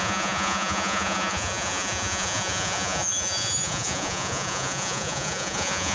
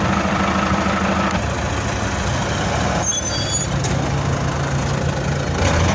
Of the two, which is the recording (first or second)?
second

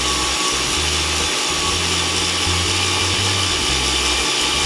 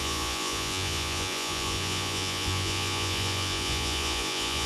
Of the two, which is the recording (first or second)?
first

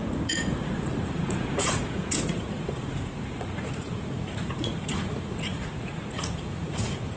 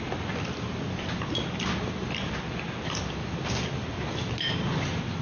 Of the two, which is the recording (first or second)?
second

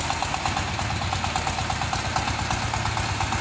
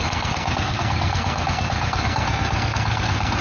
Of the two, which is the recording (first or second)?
first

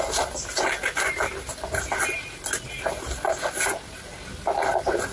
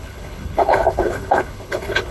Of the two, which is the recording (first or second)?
first